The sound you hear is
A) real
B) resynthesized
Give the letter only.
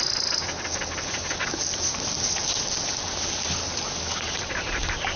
A